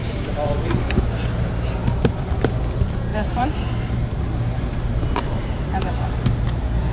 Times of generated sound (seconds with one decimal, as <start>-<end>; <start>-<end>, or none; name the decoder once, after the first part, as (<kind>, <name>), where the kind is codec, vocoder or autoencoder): 0.0-1.0 (vocoder, BigVGAN v2); 3.1-5.9